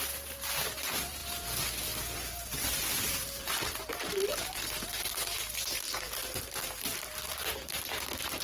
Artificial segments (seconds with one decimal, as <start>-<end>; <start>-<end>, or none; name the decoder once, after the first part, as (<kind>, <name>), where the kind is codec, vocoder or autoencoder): 0.0-1.2 (vocoder, BigVGAN v2); 2.2-8.4